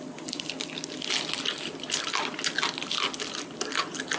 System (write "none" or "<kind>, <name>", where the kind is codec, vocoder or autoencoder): none